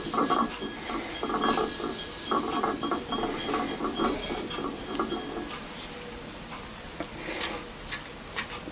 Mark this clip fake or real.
real